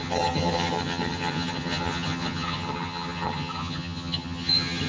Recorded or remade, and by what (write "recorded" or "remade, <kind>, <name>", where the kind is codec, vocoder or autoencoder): remade, vocoder, HiFi-GAN